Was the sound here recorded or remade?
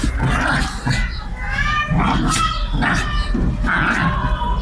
recorded